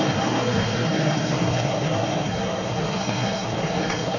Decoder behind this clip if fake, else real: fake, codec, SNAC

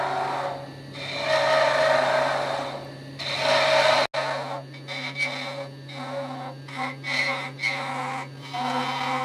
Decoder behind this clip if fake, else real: real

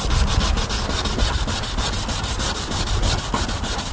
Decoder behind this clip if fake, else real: real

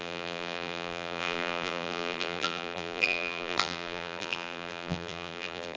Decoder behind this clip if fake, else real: fake, vocoder, BigVGAN v2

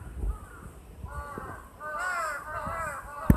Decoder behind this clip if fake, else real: real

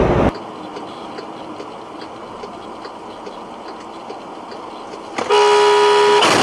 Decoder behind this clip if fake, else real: real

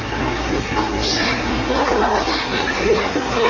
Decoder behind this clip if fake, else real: fake, codec, SNAC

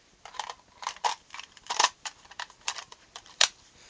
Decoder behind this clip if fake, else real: fake, vocoder, BigVGAN v2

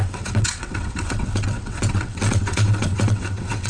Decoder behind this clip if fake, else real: fake, vocoder, WaveNeXt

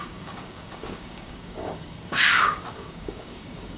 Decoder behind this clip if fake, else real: fake, codec, DAC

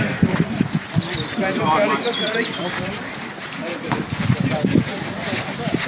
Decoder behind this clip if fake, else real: fake, vocoder, BigVGAN v2